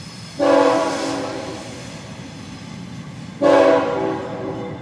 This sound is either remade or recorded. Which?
remade